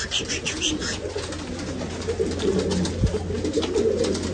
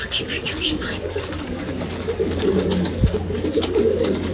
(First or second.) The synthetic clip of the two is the second